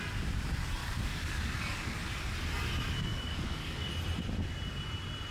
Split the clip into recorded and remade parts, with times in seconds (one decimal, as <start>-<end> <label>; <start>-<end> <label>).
0.0-0.8 recorded; 0.8-2.1 remade; 2.1-3.1 recorded; 3.1-3.9 remade; 3.9-5.3 recorded